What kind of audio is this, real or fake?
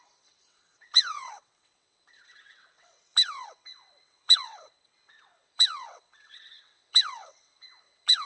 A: fake